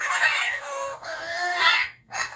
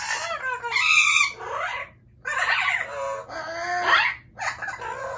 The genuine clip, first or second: second